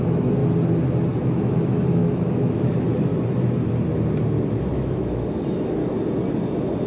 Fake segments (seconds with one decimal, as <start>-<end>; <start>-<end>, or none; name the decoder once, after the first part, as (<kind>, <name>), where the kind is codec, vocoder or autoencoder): 0.0-0.4 (autoencoder, DAC-VAE); 1.2-3.1; 4.7-5.8